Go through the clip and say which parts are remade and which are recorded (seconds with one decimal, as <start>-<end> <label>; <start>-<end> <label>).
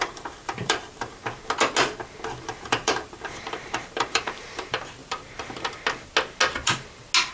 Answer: 0.0-1.2 remade; 1.2-2.5 recorded; 2.5-5.0 remade; 5.0-7.3 recorded